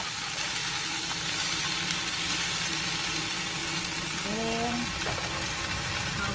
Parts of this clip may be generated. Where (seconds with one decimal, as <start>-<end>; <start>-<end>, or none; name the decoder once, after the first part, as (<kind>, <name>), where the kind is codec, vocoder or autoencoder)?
none